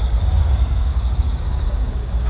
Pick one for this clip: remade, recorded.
remade